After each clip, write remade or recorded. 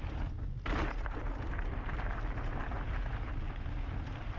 recorded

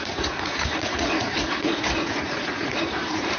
remade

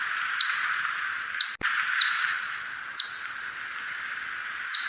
recorded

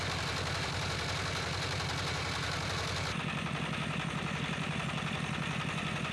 recorded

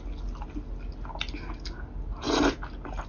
recorded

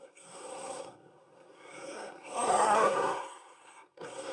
remade